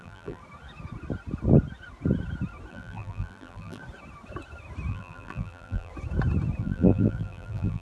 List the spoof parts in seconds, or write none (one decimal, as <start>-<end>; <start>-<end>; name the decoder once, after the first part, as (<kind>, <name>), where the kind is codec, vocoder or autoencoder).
0.0-0.4 (vocoder, BigVGAN v2); 2.7-3.8; 4.9-5.9; 6.6-7.8

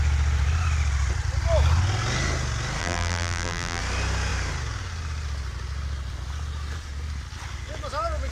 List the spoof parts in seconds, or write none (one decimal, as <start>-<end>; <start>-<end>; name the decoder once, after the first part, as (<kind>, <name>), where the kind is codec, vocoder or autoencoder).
2.8-3.8 (vocoder, BigVGAN v2)